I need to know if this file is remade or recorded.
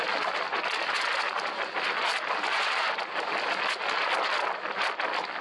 recorded